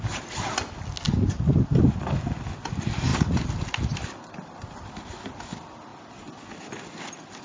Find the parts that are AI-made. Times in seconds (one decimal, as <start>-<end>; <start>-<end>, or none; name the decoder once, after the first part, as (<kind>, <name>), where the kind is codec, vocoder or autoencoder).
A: none